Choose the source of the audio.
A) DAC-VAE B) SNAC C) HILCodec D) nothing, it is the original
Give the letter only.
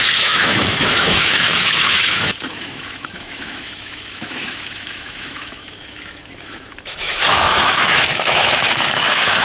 A